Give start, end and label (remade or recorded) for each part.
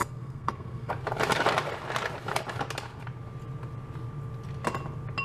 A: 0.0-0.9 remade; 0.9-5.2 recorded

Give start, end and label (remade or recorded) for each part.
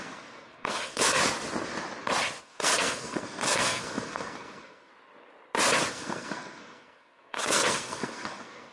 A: 0.0-1.2 remade; 1.2-2.4 recorded; 2.4-4.9 remade; 4.9-5.9 recorded; 5.9-8.7 remade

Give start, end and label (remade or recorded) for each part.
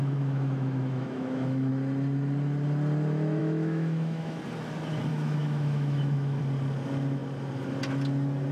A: 0.0-1.7 remade; 1.7-3.4 recorded; 3.4-4.4 remade; 4.4-5.1 recorded; 5.1-6.4 remade; 6.4-8.5 recorded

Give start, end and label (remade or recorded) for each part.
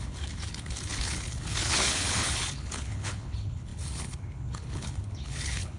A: 0.0-5.8 remade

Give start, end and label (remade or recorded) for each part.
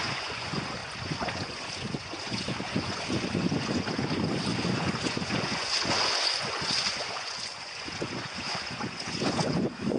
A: 0.0-10.0 remade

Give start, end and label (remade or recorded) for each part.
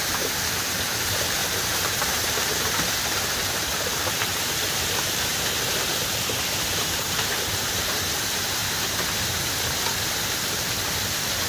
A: 0.0-5.3 remade; 5.3-6.8 recorded; 6.8-8.6 remade; 8.6-11.5 recorded